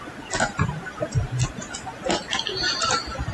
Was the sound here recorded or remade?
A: recorded